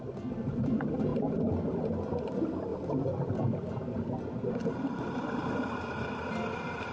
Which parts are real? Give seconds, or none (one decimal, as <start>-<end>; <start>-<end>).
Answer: 0.0-6.9